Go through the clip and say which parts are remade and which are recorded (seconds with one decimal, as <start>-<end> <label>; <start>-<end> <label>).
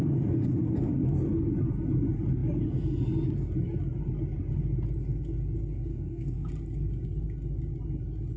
0.0-5.9 recorded; 5.9-6.5 remade; 6.5-8.4 recorded